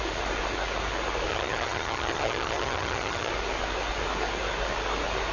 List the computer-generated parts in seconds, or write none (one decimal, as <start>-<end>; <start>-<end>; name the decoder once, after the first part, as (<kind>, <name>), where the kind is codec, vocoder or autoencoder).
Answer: 1.3-3.3 (vocoder, HiFi-GAN)